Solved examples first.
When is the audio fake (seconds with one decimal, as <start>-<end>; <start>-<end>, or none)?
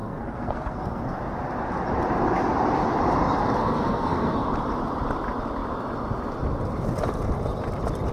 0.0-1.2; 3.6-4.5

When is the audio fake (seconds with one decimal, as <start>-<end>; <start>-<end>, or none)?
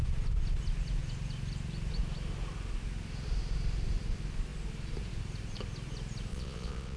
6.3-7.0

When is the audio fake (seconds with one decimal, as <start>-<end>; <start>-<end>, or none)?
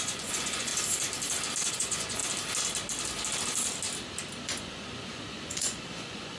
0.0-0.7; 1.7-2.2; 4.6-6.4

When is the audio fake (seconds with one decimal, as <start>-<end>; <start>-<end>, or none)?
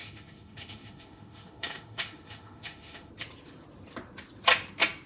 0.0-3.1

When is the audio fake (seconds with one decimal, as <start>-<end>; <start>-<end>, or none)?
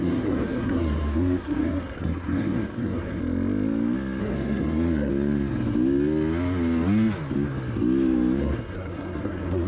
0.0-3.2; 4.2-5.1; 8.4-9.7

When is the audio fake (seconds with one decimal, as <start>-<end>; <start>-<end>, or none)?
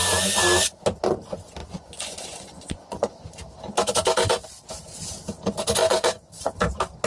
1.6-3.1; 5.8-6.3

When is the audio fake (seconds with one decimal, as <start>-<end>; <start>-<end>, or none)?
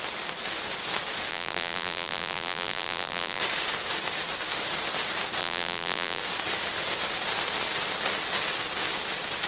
1.3-3.4; 5.4-6.2